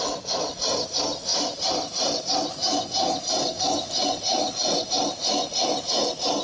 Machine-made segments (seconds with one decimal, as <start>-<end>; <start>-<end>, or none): 1.3-5.1